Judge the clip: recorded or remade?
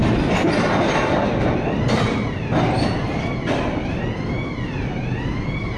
recorded